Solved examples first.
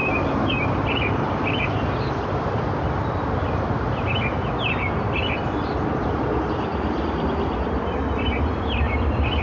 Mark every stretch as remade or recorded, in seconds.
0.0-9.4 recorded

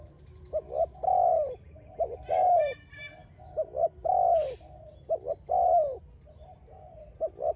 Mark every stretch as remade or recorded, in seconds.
0.0-7.6 recorded

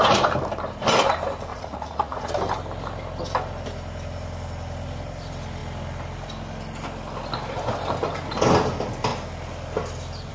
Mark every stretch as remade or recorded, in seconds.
0.0-1.5 recorded; 1.5-2.3 remade; 2.3-10.3 recorded

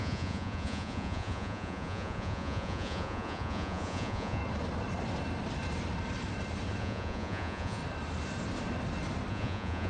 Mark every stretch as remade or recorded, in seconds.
0.0-4.4 remade; 4.4-6.8 recorded; 6.8-7.8 remade; 7.8-9.3 recorded; 9.3-9.9 remade

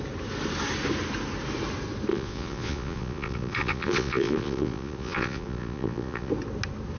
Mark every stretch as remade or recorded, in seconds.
0.0-2.1 recorded; 2.1-6.3 remade; 6.3-7.0 recorded

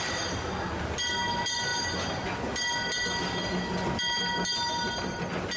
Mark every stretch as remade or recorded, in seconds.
0.0-5.6 recorded

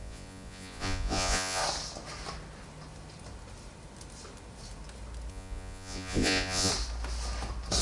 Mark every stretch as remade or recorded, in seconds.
0.0-1.6 remade; 1.6-5.3 recorded; 5.3-6.7 remade; 6.7-7.8 recorded

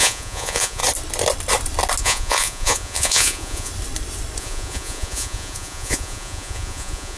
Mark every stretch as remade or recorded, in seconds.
0.0-0.8 remade; 0.8-2.0 recorded; 2.0-3.7 remade; 3.7-4.4 recorded; 4.4-7.2 remade